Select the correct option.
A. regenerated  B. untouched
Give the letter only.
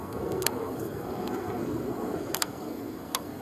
A